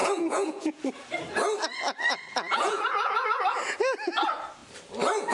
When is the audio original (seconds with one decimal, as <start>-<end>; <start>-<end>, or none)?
0.8-2.5; 3.4-5.3